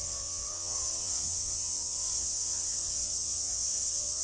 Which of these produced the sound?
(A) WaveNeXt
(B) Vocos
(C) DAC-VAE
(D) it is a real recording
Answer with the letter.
A